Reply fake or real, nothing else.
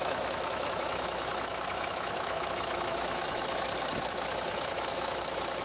fake